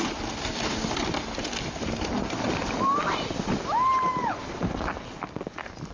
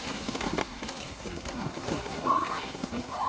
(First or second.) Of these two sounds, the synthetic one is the second